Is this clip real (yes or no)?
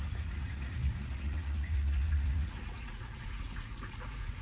no